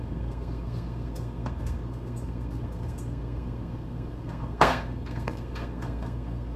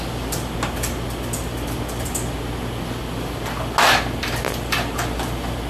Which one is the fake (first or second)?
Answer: first